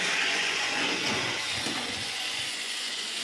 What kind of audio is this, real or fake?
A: fake